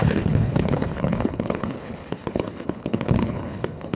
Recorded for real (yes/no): no